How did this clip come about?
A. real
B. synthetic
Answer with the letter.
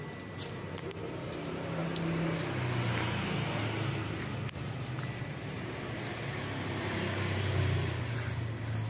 A